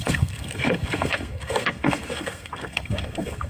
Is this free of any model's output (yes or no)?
no